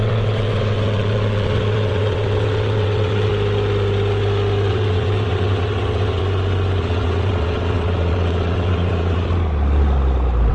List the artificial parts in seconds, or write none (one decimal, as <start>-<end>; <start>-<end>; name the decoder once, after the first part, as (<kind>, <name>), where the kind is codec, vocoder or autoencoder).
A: 0.0-3.3 (vocoder, WaveNeXt); 4.7-6.2; 6.8-9.3